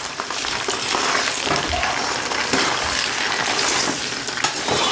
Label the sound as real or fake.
real